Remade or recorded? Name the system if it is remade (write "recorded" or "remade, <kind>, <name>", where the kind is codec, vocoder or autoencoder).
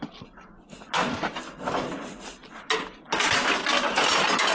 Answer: recorded